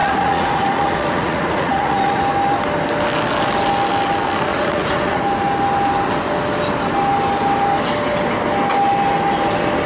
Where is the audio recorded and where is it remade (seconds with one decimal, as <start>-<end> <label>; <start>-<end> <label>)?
0.0-2.2 remade; 2.2-4.5 recorded; 4.5-5.2 remade; 5.2-9.9 recorded